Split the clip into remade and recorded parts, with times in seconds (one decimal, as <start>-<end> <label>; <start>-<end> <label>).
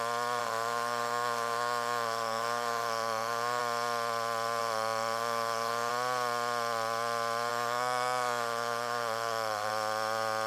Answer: 0.0-0.4 recorded; 0.4-3.6 remade; 3.6-4.6 recorded; 4.6-5.9 remade; 5.9-7.5 recorded; 7.5-9.7 remade; 9.7-10.5 recorded